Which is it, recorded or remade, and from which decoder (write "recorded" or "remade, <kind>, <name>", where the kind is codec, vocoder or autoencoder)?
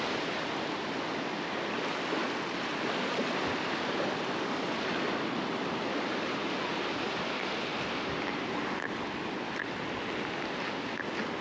recorded